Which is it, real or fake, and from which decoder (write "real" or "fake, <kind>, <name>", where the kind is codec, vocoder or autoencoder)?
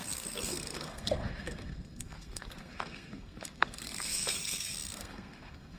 fake, codec, SNAC